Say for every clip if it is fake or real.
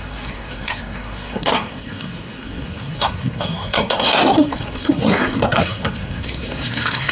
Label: fake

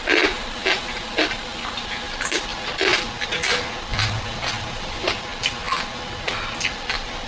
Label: real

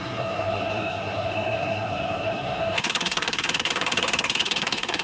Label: fake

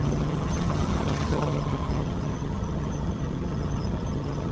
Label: fake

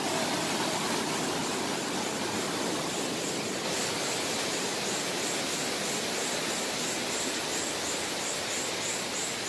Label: real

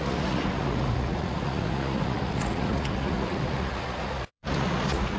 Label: fake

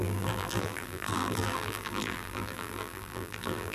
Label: fake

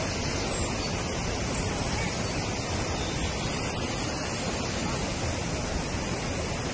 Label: real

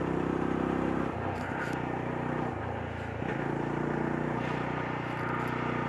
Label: real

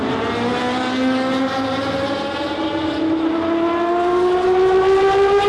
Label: real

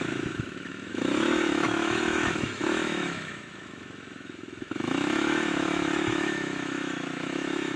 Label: fake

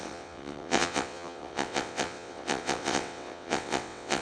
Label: fake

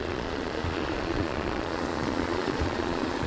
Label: fake